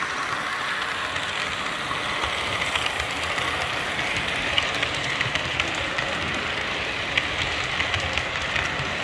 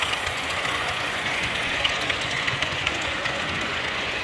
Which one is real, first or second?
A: first